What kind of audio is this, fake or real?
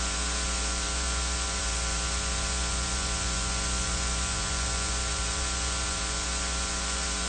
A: fake